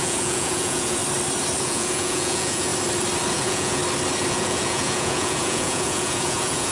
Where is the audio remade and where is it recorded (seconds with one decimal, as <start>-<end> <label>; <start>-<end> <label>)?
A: 0.0-1.0 remade; 1.0-1.6 recorded; 1.6-2.7 remade; 2.7-3.3 recorded; 3.3-3.8 remade; 3.8-4.3 recorded; 4.3-6.7 remade